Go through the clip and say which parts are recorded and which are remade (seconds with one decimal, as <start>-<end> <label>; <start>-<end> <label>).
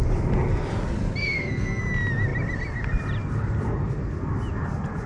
0.0-1.2 recorded; 1.2-1.8 remade; 1.8-5.1 recorded